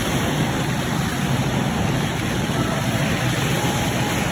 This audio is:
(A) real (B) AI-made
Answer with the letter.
A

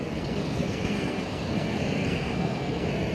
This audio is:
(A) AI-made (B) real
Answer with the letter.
A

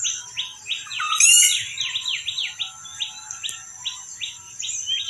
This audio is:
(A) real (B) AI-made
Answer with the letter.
A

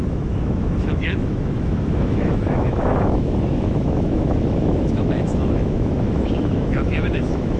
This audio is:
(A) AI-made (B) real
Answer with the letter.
A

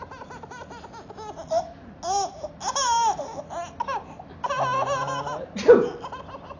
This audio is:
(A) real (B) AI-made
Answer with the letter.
A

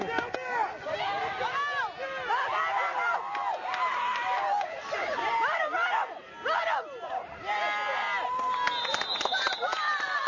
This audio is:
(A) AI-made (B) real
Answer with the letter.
B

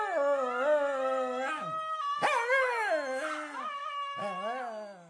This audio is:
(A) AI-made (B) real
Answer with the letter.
B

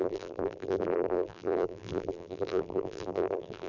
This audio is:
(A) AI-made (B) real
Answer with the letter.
A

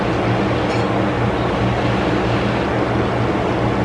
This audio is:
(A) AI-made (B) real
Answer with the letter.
B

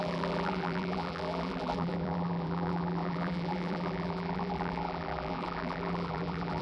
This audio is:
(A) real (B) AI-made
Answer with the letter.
B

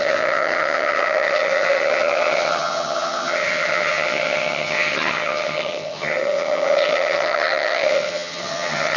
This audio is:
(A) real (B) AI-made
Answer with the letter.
B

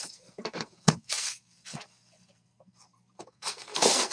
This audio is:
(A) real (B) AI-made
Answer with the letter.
B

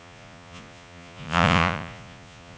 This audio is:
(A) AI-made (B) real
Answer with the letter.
A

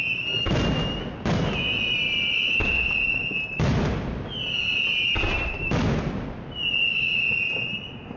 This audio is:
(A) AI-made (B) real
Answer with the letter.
B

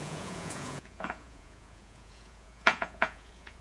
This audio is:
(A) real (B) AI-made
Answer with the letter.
B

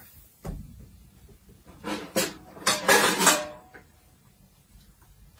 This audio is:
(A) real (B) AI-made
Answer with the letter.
B